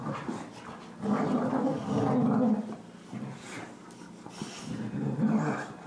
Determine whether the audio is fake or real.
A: real